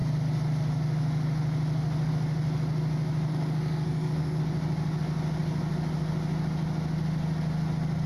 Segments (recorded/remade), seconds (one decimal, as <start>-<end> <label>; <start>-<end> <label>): 0.0-3.3 recorded; 3.3-4.4 remade; 4.4-8.1 recorded